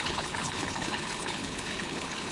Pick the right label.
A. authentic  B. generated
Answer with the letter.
B